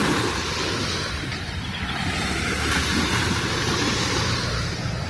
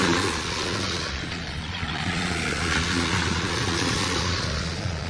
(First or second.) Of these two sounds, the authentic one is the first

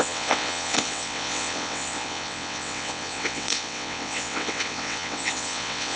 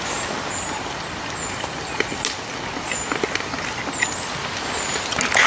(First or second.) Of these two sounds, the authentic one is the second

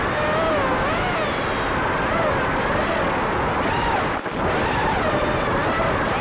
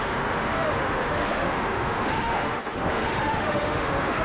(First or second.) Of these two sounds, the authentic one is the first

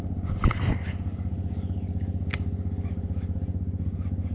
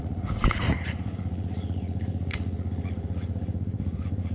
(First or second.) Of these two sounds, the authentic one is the first